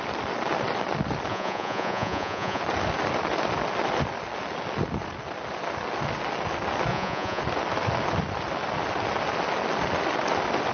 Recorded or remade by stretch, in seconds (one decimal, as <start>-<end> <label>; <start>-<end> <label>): 0.0-1.3 recorded; 1.3-2.6 remade; 2.6-6.9 recorded; 6.9-7.4 remade; 7.4-10.7 recorded